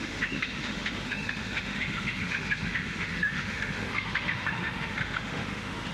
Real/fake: fake